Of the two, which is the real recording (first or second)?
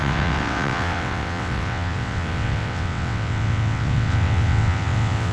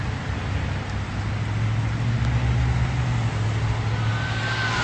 second